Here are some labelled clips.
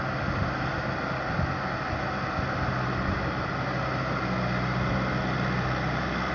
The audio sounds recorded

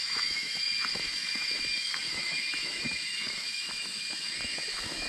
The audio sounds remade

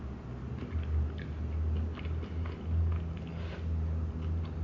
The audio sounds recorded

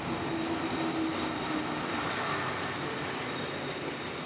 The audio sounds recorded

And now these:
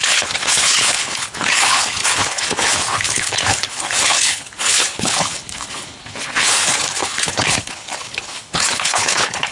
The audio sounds remade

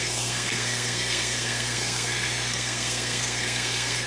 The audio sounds remade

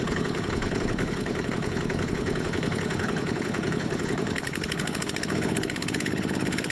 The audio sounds remade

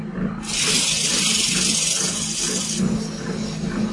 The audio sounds recorded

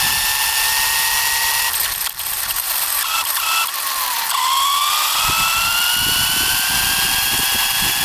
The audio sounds recorded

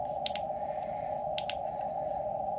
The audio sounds recorded